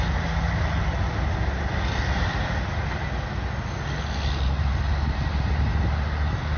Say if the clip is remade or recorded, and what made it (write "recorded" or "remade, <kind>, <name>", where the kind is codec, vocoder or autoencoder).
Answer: recorded